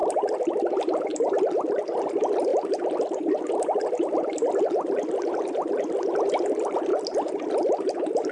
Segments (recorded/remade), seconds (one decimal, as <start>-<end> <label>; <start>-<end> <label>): 0.0-1.1 remade; 1.1-1.6 recorded; 1.6-2.5 remade; 2.5-4.6 recorded; 4.6-8.3 remade